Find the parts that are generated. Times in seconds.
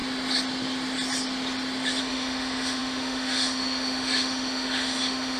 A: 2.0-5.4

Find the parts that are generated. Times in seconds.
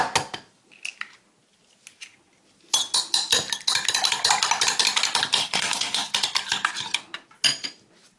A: 5.4-6.1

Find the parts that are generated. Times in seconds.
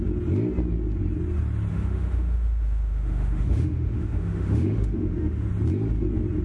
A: 1.7-5.5